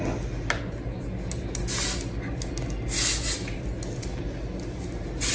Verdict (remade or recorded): recorded